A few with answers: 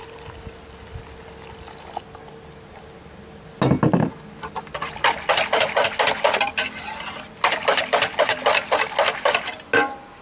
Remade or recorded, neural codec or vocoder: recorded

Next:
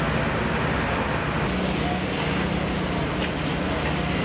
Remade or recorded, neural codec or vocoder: recorded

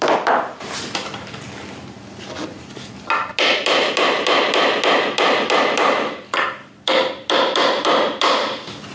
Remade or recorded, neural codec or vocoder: recorded